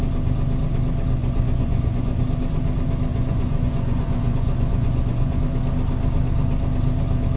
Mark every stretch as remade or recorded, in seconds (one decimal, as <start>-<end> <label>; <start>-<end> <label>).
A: 0.0-1.2 recorded; 1.2-2.2 remade; 2.2-3.1 recorded; 3.1-5.4 remade; 5.4-7.4 recorded